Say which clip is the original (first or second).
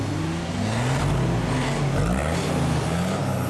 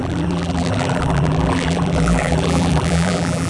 first